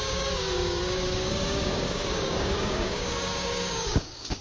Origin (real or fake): fake